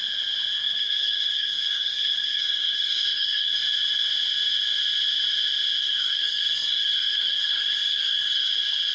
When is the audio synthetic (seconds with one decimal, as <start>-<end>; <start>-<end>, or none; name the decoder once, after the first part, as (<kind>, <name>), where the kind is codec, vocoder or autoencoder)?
0.5-3.5 (codec, SNAC); 5.8-8.5